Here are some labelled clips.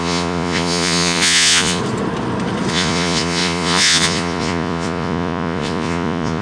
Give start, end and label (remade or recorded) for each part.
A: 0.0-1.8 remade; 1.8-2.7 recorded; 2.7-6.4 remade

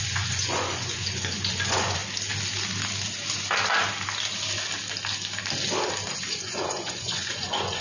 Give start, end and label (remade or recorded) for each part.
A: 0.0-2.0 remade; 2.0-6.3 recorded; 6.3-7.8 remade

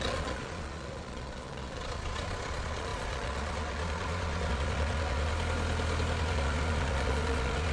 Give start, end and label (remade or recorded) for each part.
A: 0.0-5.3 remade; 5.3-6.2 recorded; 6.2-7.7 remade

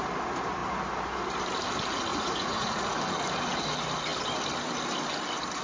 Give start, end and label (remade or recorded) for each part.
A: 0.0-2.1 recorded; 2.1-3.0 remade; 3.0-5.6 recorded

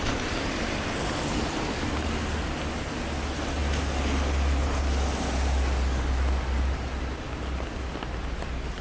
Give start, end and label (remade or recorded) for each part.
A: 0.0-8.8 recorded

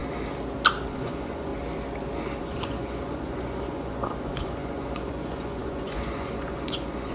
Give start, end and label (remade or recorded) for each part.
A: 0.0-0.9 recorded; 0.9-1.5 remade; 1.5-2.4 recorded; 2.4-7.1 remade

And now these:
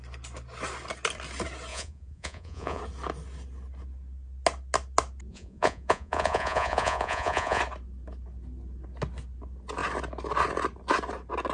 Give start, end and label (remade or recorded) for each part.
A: 0.0-1.7 recorded; 1.7-2.8 remade; 2.8-5.3 recorded; 5.3-7.6 remade; 7.6-11.5 recorded